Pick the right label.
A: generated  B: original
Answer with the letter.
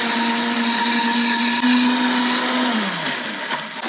B